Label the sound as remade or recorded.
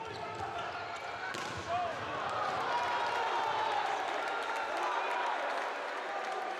recorded